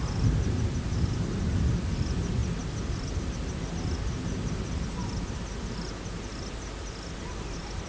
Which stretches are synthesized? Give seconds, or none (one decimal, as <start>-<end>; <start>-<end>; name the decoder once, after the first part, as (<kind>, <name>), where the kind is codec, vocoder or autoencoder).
none